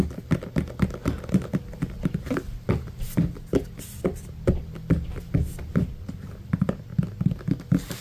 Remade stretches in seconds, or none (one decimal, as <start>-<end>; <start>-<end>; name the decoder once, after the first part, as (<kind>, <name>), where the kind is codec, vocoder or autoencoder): none